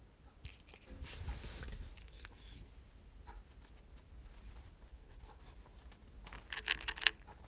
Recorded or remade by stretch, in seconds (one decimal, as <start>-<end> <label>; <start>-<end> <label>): 0.0-2.0 recorded; 2.0-2.7 remade; 2.7-4.9 recorded; 4.9-5.4 remade; 5.4-7.5 recorded